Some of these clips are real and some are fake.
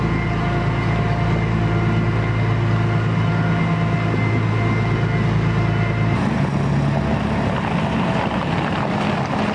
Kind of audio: real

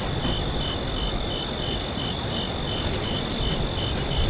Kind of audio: real